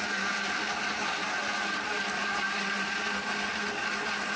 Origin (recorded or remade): recorded